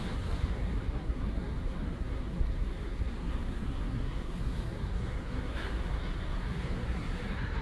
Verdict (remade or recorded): remade